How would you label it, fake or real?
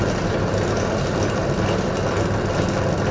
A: real